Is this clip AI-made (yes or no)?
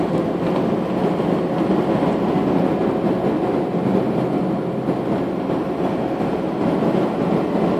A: no